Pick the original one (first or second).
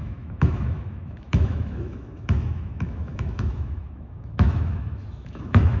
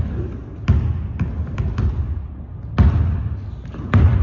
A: second